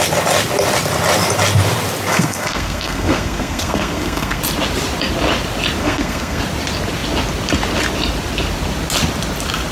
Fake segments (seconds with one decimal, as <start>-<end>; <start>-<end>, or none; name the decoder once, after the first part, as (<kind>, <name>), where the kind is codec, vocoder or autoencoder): 2.1-4.4 (codec, SNAC); 5.8-6.4